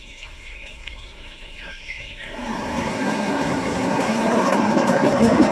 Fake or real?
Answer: fake